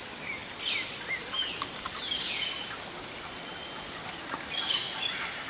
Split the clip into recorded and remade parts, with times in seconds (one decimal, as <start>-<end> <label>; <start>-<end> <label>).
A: 0.0-5.5 recorded